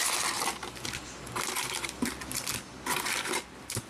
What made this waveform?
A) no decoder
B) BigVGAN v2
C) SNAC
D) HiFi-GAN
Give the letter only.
A